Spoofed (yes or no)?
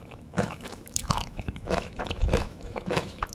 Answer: yes